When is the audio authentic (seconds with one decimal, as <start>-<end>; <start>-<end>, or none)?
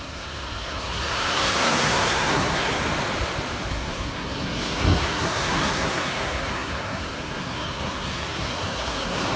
2.8-3.7